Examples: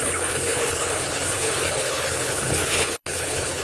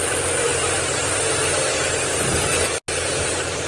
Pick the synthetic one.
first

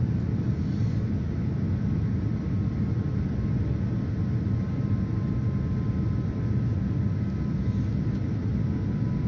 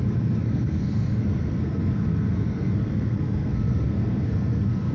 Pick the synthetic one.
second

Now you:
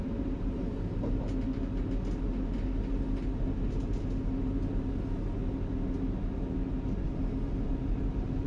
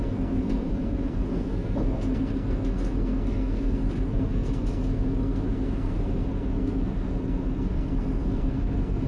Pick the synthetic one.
second